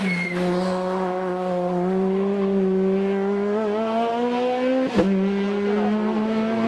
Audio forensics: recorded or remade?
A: recorded